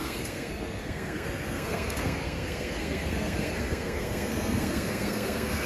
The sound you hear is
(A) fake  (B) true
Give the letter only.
A